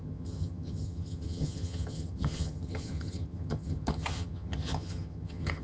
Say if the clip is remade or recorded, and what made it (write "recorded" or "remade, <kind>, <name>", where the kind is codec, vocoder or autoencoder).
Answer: remade, vocoder, HiFi-GAN